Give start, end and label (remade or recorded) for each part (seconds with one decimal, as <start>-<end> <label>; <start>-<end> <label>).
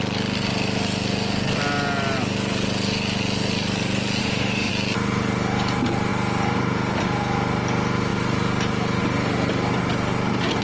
0.0-4.2 recorded; 4.2-4.7 remade; 4.7-10.6 recorded